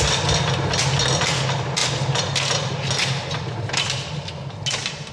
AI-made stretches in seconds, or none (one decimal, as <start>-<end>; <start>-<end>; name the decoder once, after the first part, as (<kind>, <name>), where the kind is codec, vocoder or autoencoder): none